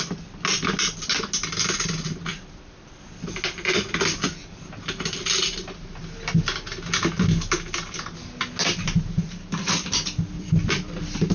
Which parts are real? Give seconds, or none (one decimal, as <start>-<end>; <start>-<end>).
0.0-11.3